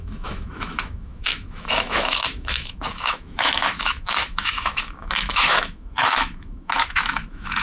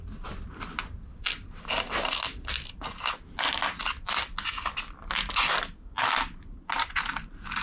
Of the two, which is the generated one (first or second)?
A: first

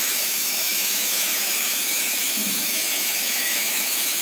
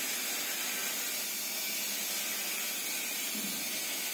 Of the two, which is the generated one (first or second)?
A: first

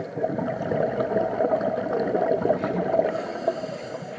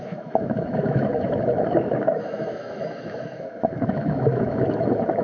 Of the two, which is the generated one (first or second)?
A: second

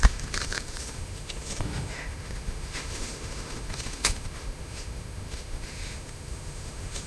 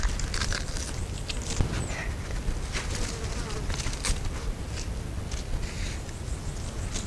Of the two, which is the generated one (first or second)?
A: first